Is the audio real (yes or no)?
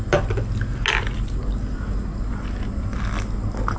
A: yes